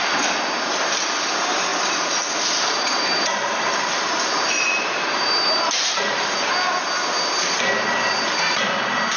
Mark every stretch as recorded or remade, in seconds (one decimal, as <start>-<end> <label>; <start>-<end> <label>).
0.0-1.7 recorded; 1.7-6.5 remade; 6.5-9.2 recorded